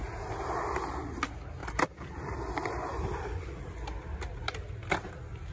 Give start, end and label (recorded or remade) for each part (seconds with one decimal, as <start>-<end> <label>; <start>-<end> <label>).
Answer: 0.0-1.6 recorded; 1.6-3.6 remade; 3.6-5.5 recorded